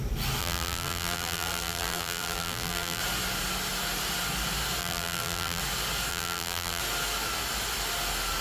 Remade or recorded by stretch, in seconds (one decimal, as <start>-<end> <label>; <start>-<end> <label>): 0.0-0.4 recorded; 0.4-3.0 remade; 3.0-4.8 recorded; 4.8-5.6 remade; 5.6-6.1 recorded; 6.1-6.8 remade; 6.8-8.4 recorded